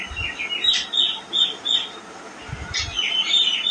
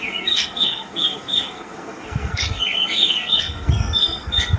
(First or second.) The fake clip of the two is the second